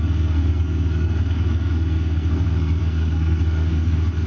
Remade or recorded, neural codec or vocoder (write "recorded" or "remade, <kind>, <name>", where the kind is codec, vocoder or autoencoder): remade, codec, SNAC